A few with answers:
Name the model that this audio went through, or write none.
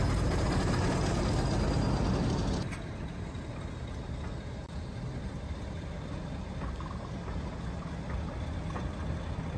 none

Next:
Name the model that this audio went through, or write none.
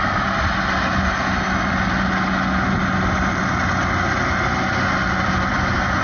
none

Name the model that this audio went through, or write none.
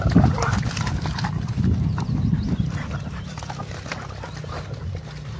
none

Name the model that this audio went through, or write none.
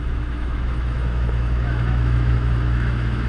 autoencoder, DAC-VAE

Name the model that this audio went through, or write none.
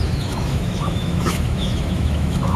autoencoder, DAC-VAE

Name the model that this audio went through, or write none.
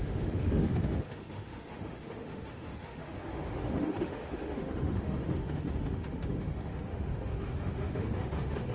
autoencoder, DAC-VAE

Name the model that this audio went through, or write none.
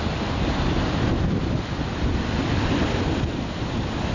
none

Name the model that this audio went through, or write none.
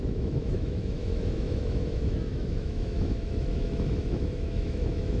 autoencoder, DAC-VAE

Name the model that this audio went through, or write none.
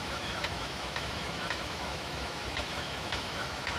autoencoder, DAC-VAE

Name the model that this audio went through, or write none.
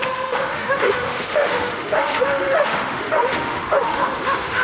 autoencoder, DAC-VAE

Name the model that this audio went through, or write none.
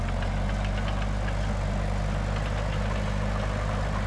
none